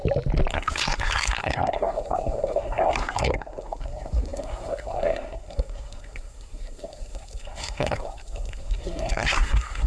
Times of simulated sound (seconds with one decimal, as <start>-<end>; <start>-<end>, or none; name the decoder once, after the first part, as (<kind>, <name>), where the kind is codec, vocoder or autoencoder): 0.5-9.9 (codec, SNAC)